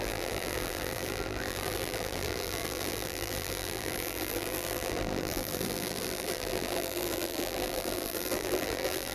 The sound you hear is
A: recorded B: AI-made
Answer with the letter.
B